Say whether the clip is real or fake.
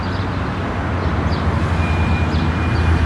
real